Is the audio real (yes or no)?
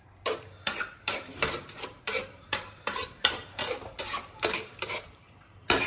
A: no